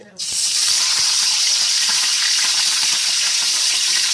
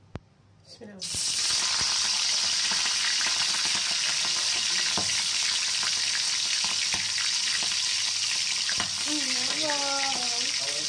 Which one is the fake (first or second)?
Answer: first